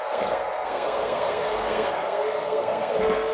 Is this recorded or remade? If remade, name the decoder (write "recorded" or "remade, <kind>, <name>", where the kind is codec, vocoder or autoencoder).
remade, codec, SNAC